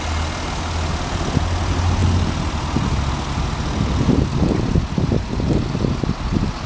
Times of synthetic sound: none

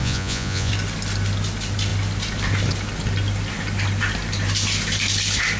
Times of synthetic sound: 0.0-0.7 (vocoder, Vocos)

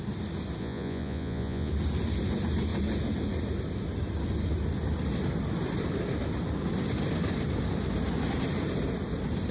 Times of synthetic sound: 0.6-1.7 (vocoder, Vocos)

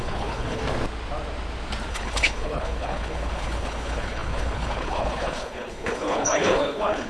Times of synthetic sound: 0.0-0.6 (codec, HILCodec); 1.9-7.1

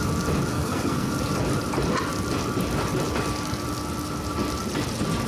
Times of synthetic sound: 0.5-1.1 (codec, SNAC)

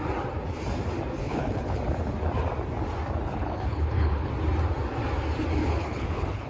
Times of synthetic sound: 1.2-1.8 (codec, HILCodec); 3.4-4.3; 5.6-6.5